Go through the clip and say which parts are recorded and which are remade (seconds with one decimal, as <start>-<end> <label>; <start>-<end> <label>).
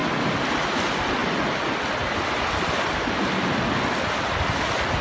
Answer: 0.0-0.7 recorded; 0.7-1.2 remade; 1.2-4.2 recorded; 4.2-5.0 remade